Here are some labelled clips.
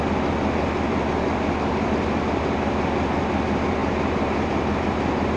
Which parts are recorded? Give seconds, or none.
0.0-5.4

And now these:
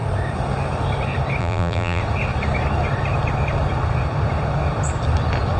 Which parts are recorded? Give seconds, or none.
0.0-1.4; 2.0-5.6

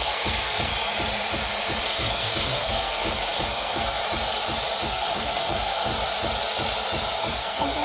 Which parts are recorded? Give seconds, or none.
0.7-1.8; 4.0-4.9; 5.9-7.2

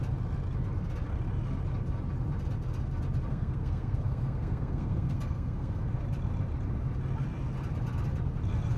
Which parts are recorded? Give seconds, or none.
0.0-3.3; 5.8-8.8

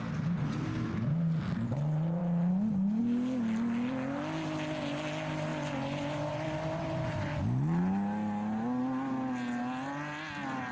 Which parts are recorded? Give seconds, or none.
0.0-10.7

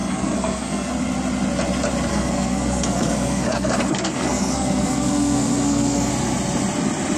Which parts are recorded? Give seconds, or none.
0.9-2.1; 6.1-7.2